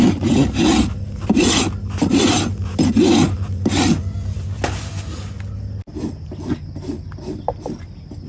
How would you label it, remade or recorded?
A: recorded